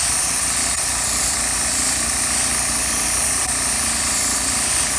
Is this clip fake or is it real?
real